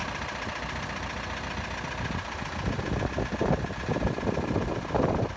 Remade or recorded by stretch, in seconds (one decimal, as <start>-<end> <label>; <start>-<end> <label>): 0.0-5.4 recorded